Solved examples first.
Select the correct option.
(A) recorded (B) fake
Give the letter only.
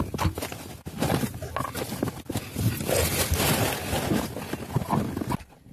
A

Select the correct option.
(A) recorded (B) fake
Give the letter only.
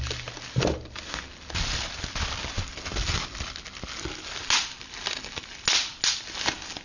A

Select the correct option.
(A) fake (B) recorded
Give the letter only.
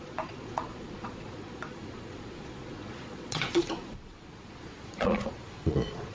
A